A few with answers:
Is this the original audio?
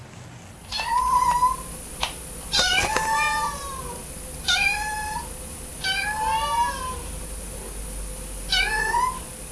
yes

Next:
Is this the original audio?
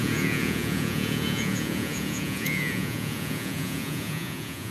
no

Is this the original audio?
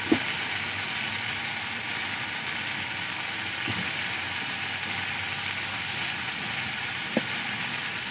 yes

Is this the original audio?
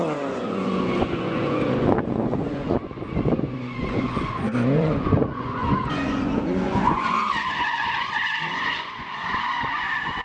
no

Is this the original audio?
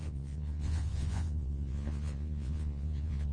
no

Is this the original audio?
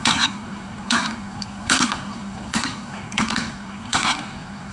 no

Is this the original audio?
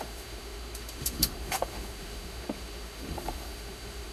no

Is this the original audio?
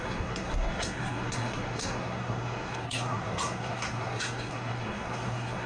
no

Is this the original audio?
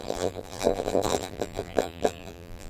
no